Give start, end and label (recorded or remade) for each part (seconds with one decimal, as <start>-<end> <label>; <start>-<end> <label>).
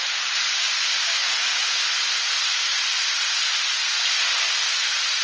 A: 0.0-1.2 recorded; 1.2-1.8 remade; 1.8-5.2 recorded